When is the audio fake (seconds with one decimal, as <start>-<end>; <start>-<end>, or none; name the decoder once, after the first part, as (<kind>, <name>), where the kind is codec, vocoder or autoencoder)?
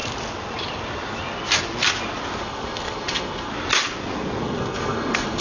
2.4-3.5 (codec, SNAC); 4.4-5.4